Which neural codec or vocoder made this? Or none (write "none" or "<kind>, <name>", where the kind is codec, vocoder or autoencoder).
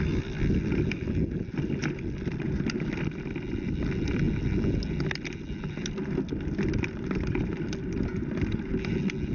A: none